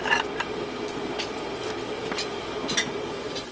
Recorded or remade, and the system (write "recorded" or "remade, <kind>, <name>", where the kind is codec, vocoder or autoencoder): recorded